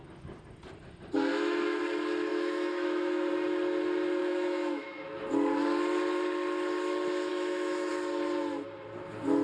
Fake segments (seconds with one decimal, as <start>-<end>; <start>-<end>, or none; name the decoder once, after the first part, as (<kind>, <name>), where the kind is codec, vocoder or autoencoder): 1.3-1.8 (autoencoder, DAC-VAE); 2.3-3.3; 4.2-5.2; 7.3-7.9